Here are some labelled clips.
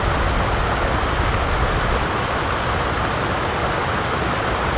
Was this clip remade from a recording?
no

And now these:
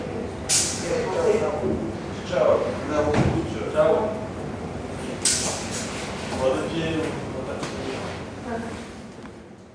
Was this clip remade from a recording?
no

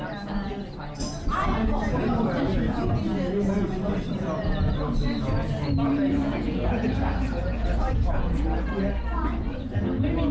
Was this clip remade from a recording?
no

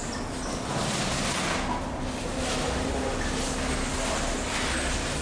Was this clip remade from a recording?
no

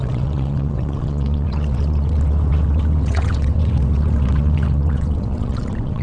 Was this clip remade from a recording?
yes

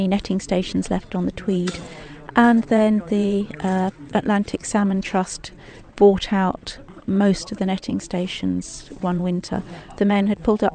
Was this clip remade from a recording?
yes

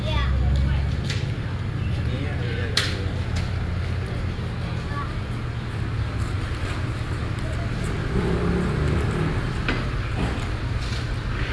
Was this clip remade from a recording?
no